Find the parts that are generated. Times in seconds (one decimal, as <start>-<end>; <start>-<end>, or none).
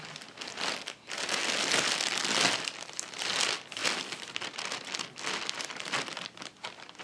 none